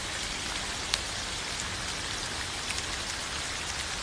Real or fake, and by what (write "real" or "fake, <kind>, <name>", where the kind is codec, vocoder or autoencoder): fake, vocoder, BigVGAN v2